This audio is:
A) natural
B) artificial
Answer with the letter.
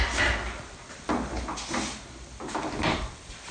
A